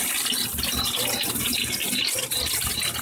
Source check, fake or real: real